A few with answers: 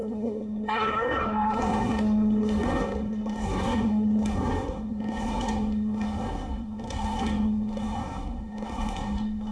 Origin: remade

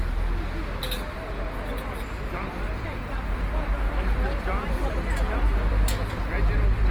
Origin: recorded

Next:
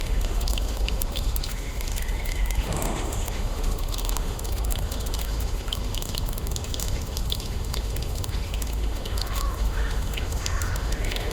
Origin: remade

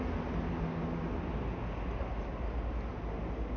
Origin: recorded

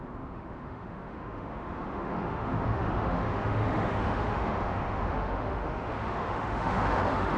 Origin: remade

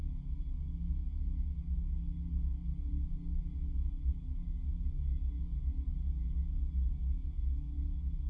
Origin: recorded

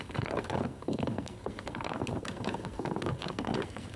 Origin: remade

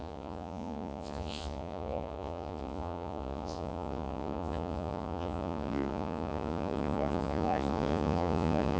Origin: remade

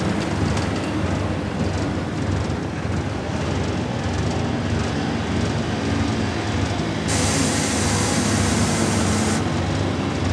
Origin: recorded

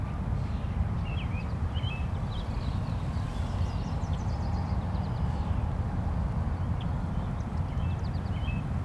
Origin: remade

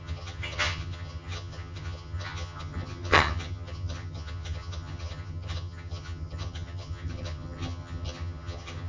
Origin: remade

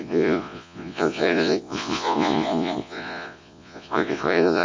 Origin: remade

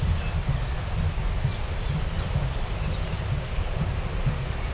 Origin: recorded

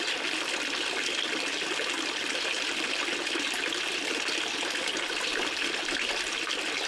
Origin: recorded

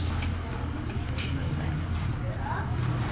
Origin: recorded